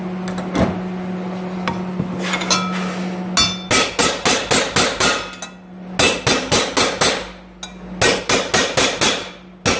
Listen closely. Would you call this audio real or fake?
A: real